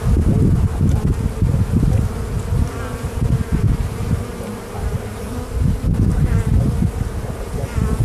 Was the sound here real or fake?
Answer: real